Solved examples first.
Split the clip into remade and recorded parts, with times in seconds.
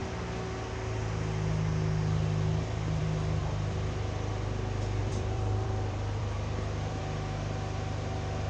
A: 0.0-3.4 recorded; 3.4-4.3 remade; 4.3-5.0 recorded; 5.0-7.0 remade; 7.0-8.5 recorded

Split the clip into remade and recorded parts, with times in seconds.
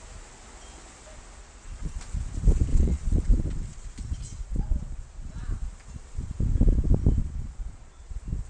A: 0.0-1.4 recorded; 1.4-2.0 remade; 2.0-2.7 recorded; 2.7-3.3 remade; 3.3-4.4 recorded; 4.4-5.3 remade; 5.3-7.2 recorded; 7.2-8.1 remade; 8.1-8.5 recorded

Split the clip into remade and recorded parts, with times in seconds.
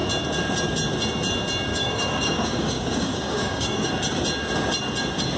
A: 0.0-1.7 recorded; 1.7-3.9 remade; 3.9-5.4 recorded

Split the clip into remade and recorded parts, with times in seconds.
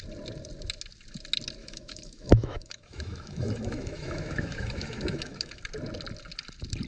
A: 0.0-1.6 recorded; 1.6-5.6 remade; 5.6-6.9 recorded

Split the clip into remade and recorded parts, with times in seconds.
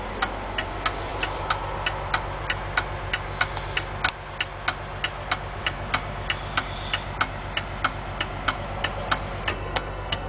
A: 0.0-9.5 recorded; 9.5-10.3 remade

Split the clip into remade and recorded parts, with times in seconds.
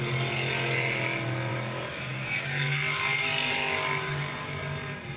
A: 0.0-1.5 recorded; 1.5-4.6 remade; 4.6-5.2 recorded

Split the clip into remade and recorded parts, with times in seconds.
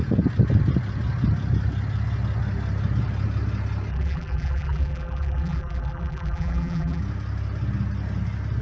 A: 0.0-3.9 recorded; 3.9-7.0 remade; 7.0-8.6 recorded